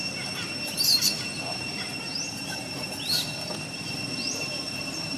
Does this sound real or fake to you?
fake